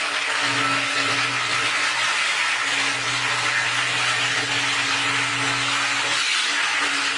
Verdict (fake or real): real